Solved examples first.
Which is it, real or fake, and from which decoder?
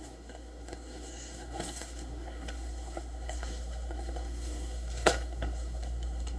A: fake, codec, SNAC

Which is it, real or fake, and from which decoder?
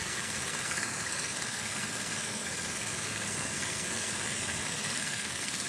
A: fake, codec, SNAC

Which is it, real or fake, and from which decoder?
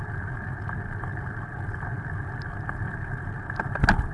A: real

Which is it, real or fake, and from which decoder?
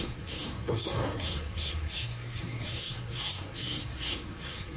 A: fake, codec, SNAC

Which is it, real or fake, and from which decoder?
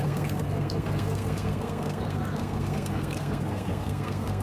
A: fake, codec, SNAC